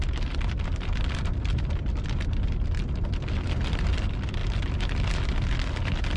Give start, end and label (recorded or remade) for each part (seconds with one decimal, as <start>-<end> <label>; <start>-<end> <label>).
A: 0.0-4.4 remade; 4.4-5.2 recorded; 5.2-6.2 remade